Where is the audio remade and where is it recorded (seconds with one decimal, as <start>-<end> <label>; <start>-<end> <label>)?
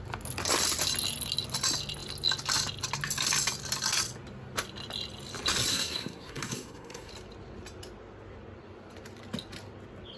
0.0-5.7 recorded; 5.7-7.1 remade; 7.1-10.2 recorded